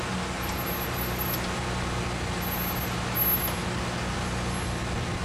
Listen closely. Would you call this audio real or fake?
real